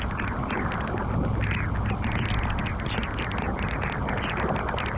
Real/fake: real